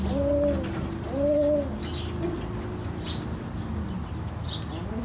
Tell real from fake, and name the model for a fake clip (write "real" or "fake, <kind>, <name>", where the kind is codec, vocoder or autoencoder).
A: real